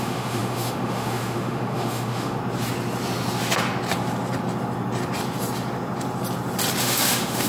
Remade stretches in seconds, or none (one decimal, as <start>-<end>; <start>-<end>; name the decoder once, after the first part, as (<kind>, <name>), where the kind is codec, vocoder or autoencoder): 0.0-2.4 (autoencoder, DAC-VAE); 6.8-7.5